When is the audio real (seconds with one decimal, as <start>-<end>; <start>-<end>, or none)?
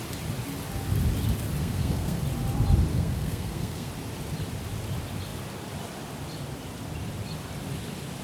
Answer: 0.0-1.6; 2.2-2.9; 3.9-8.2